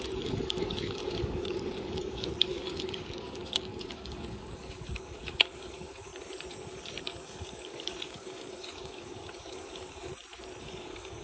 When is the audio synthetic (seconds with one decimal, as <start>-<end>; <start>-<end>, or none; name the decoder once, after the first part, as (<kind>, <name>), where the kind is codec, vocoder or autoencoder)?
0.0-6.1 (codec, DAC); 7.0-10.1; 10.6-11.2

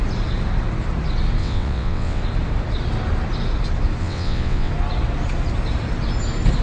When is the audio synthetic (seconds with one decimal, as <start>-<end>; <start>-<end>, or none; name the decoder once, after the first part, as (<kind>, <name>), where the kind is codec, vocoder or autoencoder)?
1.4-2.2 (vocoder, WaveNeXt); 4.0-4.7

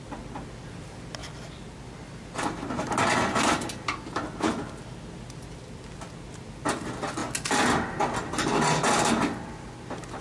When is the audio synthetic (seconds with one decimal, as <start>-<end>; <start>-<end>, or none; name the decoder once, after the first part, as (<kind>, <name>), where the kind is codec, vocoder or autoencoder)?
none

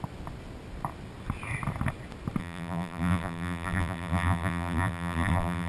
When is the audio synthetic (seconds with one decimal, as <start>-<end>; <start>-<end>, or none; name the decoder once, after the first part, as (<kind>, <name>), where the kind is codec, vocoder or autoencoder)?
2.4-5.7 (vocoder, BigVGAN v2)

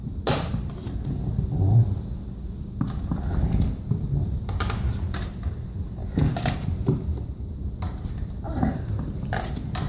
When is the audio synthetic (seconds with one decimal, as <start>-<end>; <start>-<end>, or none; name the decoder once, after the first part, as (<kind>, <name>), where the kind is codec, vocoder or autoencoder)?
none

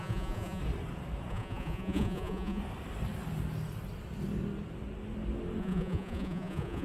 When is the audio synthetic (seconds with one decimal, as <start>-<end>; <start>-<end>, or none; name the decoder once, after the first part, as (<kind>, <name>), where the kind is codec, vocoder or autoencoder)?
0.0-0.6 (vocoder, Vocos); 1.3-2.6; 5.6-6.8

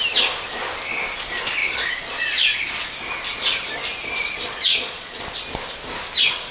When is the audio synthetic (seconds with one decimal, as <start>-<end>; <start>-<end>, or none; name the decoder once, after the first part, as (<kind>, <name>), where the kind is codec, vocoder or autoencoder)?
1.6-2.2 (vocoder, Vocos); 4.7-5.2

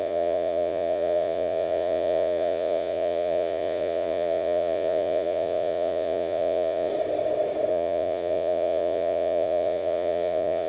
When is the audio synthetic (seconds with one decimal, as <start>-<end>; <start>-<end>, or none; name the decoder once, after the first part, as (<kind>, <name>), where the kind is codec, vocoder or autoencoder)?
0.0-6.9 (vocoder, Vocos); 7.7-10.7